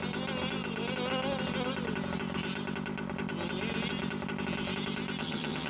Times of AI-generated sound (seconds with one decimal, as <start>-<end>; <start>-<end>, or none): 5.2-5.7